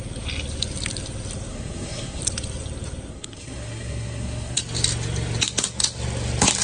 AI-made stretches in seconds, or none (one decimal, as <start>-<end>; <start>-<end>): 1.5-2.2; 3.1-4.6